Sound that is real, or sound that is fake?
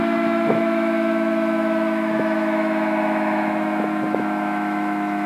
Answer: fake